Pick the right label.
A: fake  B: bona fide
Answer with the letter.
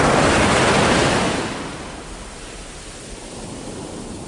B